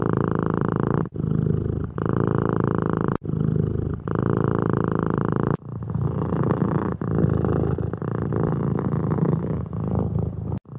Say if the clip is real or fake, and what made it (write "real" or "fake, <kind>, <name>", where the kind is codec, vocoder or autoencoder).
real